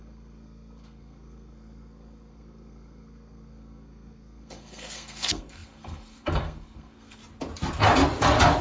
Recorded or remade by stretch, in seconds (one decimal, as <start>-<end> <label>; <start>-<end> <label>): 0.0-7.2 remade; 7.2-8.6 recorded